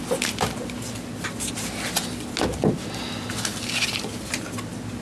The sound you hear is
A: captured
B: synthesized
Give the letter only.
A